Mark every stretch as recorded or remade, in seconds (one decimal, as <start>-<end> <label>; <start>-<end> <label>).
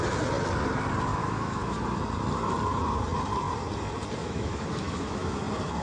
0.0-1.1 recorded; 1.1-1.8 remade; 1.8-4.2 recorded; 4.2-5.3 remade; 5.3-5.8 recorded